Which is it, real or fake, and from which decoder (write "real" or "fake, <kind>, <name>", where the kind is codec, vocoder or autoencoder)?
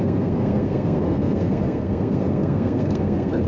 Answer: fake, codec, SNAC